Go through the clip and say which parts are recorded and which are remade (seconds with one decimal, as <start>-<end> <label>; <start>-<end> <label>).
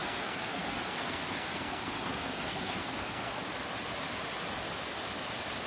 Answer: 0.0-3.4 remade; 3.4-5.7 recorded